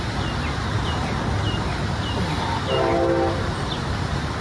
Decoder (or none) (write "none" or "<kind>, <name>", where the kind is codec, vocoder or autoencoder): none